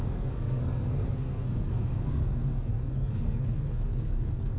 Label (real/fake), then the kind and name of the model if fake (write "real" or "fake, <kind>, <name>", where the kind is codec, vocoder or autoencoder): fake, codec, SNAC